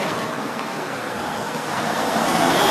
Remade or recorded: remade